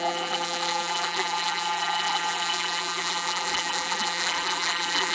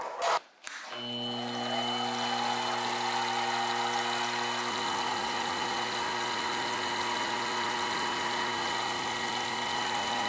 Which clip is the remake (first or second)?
first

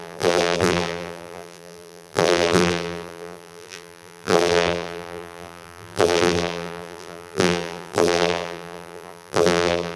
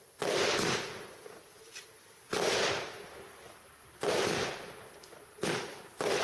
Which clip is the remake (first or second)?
first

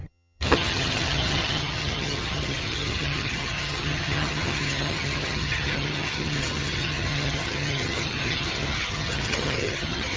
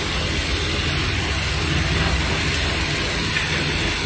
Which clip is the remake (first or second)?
first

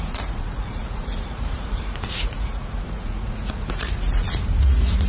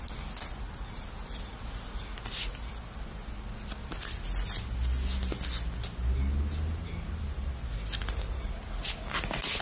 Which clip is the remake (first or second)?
first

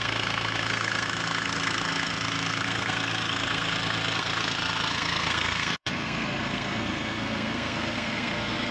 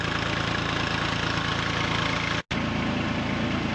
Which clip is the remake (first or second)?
first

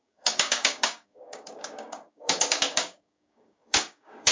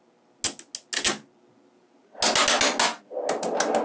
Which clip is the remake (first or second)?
first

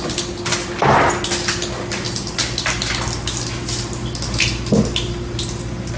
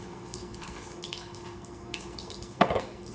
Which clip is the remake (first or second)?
second